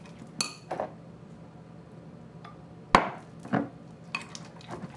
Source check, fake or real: real